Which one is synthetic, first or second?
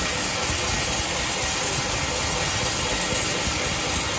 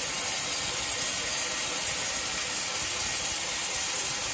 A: second